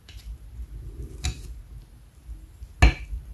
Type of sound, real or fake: real